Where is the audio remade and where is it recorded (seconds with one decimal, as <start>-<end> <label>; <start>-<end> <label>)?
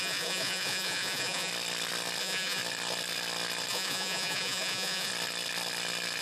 0.0-1.5 remade; 1.5-2.2 recorded; 2.2-2.6 remade; 2.6-3.7 recorded; 3.7-5.1 remade; 5.1-6.2 recorded